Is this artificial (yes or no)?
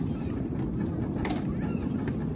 no